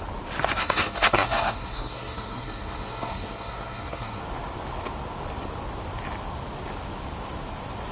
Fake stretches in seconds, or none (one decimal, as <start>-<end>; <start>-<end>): 0.6-4.2